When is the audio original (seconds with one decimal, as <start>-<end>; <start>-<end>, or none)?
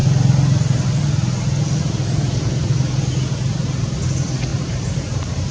0.0-4.5